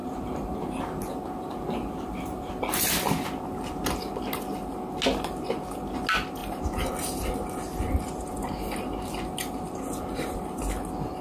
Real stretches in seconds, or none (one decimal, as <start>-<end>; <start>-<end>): 1.1-6.4; 6.9-11.2